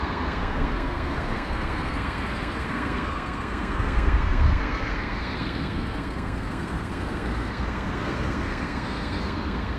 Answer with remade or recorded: remade